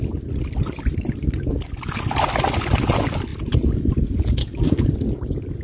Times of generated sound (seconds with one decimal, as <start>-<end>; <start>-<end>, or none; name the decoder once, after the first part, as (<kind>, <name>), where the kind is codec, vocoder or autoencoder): 4.4-4.9 (codec, DAC)